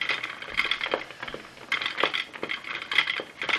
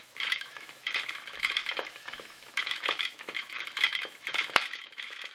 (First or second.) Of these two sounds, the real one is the first